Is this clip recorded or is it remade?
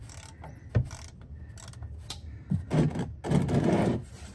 recorded